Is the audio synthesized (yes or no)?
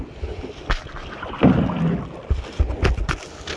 no